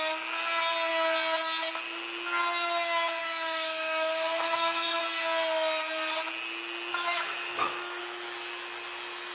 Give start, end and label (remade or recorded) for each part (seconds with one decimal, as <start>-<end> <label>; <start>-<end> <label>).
0.0-3.2 recorded; 3.2-5.0 remade; 5.0-6.9 recorded; 6.9-8.0 remade; 8.0-9.3 recorded